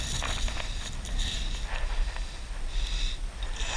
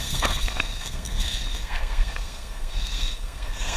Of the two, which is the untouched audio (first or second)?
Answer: first